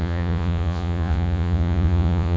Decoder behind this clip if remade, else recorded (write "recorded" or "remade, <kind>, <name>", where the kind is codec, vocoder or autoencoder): remade, vocoder, Vocos